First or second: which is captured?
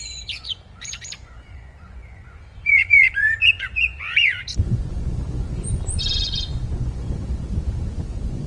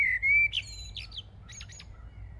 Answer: second